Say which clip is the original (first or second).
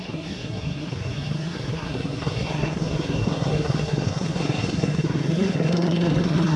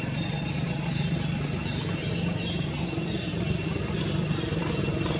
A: second